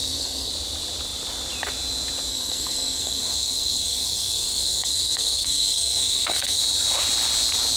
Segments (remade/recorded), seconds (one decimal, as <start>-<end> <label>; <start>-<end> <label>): 0.0-0.5 remade; 0.5-2.3 recorded; 2.3-6.6 remade; 6.6-7.8 recorded